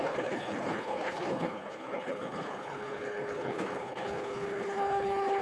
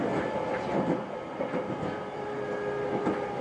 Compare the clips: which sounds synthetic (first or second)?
first